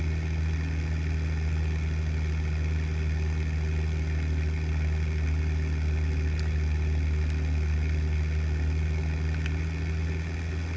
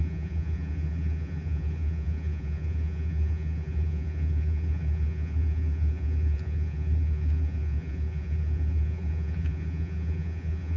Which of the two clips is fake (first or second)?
second